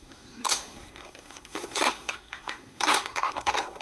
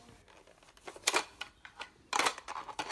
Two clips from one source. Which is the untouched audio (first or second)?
second